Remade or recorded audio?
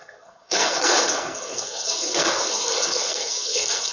remade